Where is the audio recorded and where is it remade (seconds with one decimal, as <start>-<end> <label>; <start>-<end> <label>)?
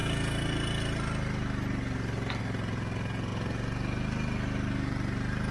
0.0-5.5 recorded